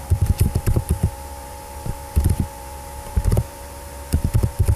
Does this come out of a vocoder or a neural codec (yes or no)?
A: yes